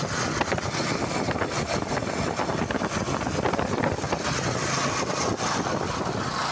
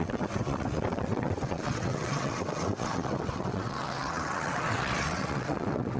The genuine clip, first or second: first